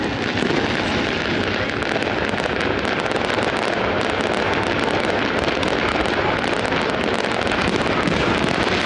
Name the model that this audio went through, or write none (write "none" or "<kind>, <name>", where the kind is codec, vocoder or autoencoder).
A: none